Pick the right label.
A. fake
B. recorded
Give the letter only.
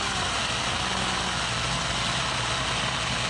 B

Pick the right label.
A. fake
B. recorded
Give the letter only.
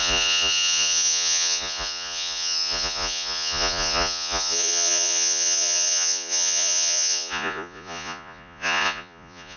A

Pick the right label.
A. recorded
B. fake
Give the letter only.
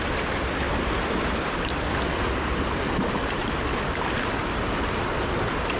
A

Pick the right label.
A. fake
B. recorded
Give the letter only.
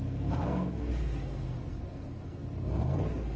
A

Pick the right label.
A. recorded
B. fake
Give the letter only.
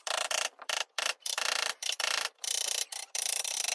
B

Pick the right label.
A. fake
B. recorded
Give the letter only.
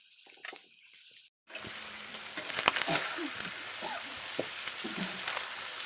A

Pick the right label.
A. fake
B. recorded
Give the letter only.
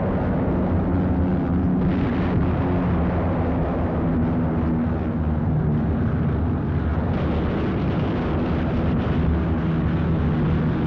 B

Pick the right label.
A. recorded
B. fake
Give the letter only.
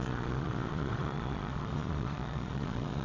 B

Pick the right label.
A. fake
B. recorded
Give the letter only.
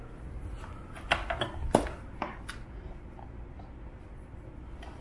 B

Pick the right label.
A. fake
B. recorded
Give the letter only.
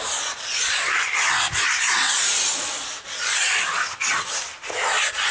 B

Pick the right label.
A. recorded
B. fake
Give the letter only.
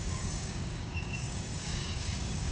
B